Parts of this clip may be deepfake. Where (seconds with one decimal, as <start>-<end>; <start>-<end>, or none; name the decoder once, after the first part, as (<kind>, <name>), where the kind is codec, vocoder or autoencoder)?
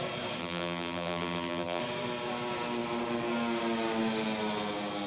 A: 0.4-1.8 (vocoder, BigVGAN v2)